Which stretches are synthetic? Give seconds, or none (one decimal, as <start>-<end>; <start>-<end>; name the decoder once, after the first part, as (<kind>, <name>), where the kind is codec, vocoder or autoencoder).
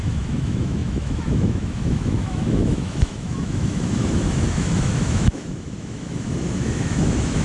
0.0-7.4 (autoencoder, DAC-VAE)